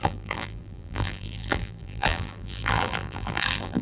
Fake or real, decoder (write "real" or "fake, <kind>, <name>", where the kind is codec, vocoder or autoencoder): fake, vocoder, BigVGAN v2